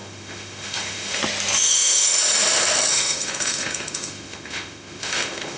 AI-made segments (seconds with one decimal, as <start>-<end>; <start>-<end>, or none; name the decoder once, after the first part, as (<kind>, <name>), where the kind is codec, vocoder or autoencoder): 0.0-1.2 (autoencoder, DAC-VAE); 1.6-2.2; 2.9-5.6

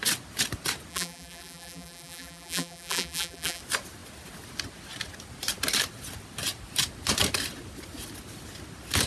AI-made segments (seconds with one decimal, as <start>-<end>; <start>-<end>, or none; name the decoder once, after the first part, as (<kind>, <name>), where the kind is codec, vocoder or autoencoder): 0.9-3.6 (vocoder, BigVGAN v2)

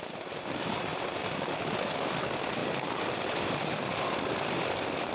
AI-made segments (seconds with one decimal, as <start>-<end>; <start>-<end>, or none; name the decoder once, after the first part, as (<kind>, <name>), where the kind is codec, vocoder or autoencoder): none

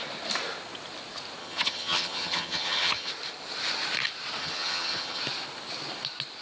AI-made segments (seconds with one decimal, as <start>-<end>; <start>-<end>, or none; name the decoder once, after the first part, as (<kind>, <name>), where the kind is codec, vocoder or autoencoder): 1.4-3.1 (vocoder, HiFi-GAN); 4.4-5.2

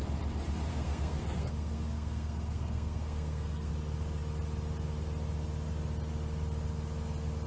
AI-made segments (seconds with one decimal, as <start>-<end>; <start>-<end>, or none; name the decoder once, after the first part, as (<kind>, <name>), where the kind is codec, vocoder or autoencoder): 0.7-3.7 (codec, SNAC)

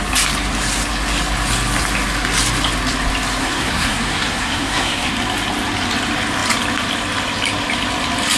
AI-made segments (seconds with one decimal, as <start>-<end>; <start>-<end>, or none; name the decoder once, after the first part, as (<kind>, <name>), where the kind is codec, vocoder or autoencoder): 3.4-5.1 (codec, SNAC)

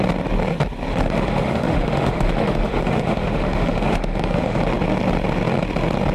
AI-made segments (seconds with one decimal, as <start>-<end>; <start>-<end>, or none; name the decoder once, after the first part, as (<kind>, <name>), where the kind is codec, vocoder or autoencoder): 0.9-4.6 (autoencoder, DAC-VAE)

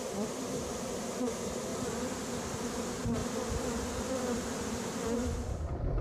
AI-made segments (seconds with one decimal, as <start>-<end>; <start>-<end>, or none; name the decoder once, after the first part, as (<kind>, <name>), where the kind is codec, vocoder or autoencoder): 0.0-1.7 (vocoder, BigVGAN v2); 2.4-3.2; 4.1-6.0